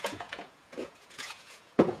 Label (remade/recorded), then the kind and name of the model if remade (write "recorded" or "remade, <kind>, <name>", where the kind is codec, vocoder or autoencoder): remade, vocoder, Vocos